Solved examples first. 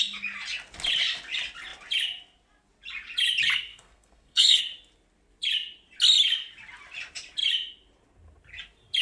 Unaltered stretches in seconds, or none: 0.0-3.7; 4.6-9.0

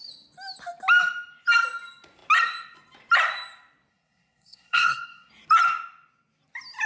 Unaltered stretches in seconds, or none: 0.0-3.9; 5.3-6.9